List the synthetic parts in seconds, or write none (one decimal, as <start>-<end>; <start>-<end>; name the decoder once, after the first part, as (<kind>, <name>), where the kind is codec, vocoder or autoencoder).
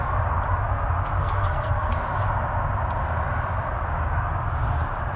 1.2-1.9 (codec, SNAC)